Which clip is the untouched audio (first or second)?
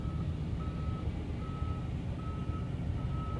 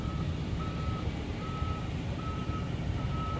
first